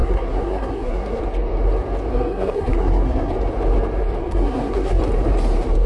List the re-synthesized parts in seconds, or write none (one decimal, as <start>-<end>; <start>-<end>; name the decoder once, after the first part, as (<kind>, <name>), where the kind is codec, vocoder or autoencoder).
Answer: 0.0-1.2 (codec, SNAC); 2.1-3.3; 4.2-5.0